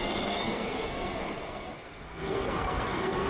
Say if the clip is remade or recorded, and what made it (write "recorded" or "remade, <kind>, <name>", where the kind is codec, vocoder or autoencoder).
remade, codec, SNAC